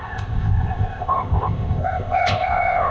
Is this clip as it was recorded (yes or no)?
no